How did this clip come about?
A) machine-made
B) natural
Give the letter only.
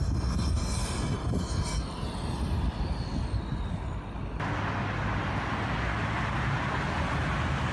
B